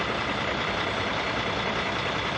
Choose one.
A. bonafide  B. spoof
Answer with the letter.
A